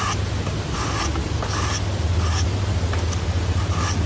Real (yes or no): yes